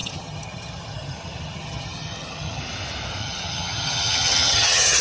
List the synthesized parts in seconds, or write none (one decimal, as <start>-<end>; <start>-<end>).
0.0-2.6; 3.2-5.0